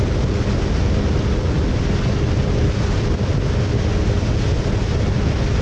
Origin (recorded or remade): recorded